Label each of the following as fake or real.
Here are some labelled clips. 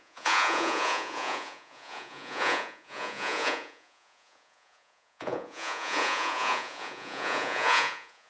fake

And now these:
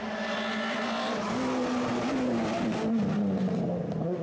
real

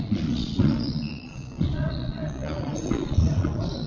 fake